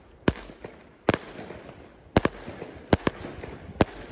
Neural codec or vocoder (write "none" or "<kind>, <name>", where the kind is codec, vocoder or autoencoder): none